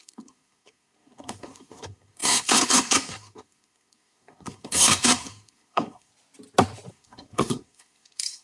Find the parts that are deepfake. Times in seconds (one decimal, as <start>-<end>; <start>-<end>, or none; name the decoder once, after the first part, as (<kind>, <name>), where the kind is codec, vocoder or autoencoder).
0.0-6.1 (codec, SNAC); 6.9-8.4